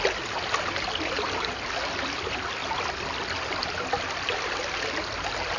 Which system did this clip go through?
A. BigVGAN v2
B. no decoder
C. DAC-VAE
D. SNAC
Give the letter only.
B